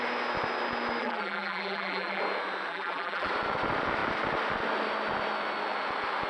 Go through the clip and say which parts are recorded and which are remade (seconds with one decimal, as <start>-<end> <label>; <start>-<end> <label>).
0.0-1.0 recorded; 1.0-2.2 remade; 2.2-2.7 recorded; 2.7-3.3 remade; 3.3-6.3 recorded